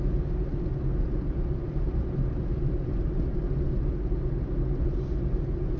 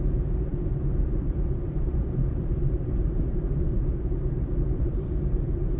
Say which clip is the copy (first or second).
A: second